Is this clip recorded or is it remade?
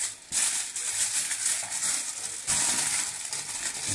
recorded